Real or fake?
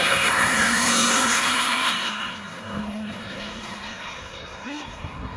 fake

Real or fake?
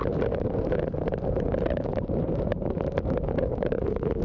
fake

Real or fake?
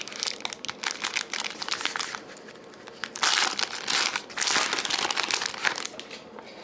real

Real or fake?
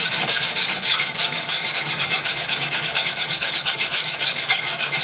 fake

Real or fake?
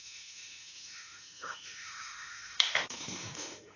fake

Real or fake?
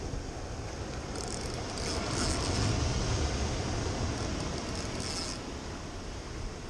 real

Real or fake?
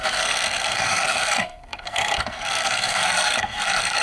fake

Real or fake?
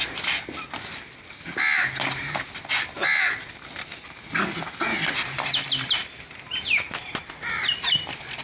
real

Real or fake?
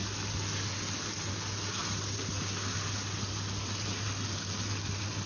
real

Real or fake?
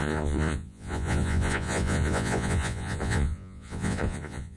fake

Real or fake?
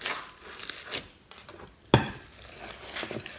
real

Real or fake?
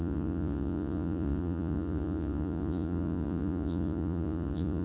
fake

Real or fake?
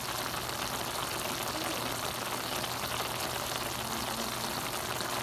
real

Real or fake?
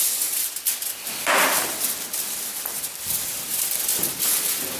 real